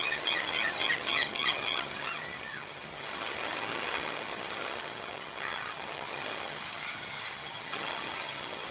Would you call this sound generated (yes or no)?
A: yes